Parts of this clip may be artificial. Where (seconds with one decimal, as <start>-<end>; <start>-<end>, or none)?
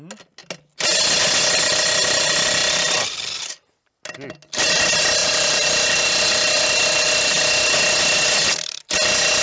2.6-3.9; 5.2-7.4